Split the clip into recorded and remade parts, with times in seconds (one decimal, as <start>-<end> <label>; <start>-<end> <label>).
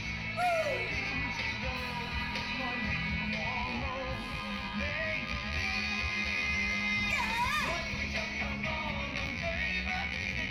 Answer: 0.0-3.6 recorded; 3.6-7.0 remade; 7.0-9.1 recorded; 9.1-10.5 remade